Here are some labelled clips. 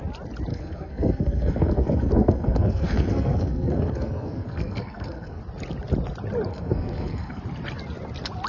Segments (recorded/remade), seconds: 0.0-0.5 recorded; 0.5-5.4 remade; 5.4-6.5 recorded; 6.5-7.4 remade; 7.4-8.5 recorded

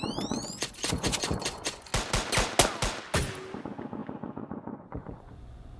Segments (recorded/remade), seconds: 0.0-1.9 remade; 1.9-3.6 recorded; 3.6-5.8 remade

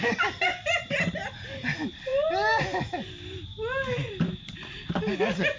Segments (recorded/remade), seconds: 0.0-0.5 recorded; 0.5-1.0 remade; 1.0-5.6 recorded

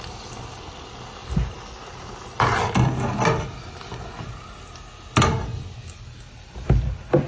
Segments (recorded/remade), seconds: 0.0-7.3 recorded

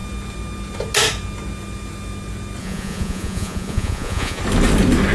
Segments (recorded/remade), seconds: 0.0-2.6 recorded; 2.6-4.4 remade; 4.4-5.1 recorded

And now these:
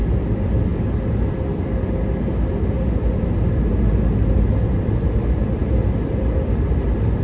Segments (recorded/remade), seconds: 0.0-7.2 recorded